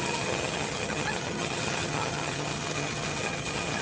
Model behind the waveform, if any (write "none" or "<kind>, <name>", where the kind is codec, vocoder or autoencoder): vocoder, HiFi-GAN